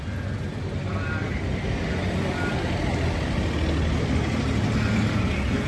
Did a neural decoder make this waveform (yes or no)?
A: no